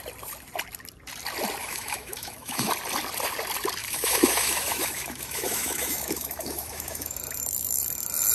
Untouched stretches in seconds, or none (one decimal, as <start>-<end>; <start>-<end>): 0.0-1.6; 2.7-3.8; 7.2-8.3